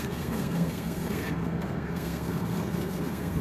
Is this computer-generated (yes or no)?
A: yes